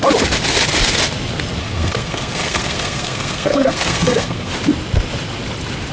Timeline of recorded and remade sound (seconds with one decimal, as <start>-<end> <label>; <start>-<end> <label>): 0.0-1.6 recorded; 1.6-4.5 remade; 4.5-5.9 recorded